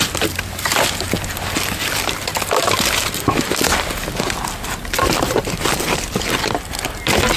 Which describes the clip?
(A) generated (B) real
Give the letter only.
B